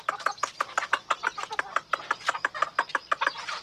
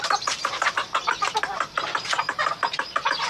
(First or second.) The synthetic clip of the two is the second